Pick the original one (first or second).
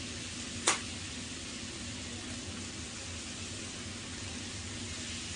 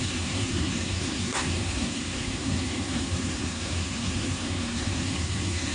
first